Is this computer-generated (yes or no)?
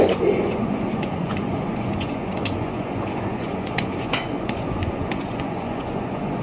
yes